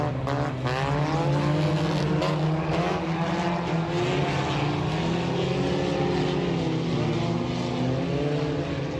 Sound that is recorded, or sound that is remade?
recorded